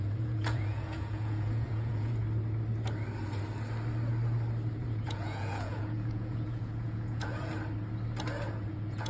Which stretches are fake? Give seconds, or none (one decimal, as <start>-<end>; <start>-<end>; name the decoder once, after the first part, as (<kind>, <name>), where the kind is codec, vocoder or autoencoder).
0.0-2.2 (vocoder, Vocos); 4.8-7.5; 8.7-9.1